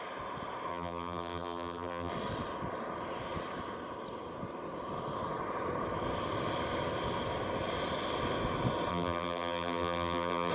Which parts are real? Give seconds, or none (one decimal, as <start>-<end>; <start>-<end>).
0.0-0.7; 2.1-8.9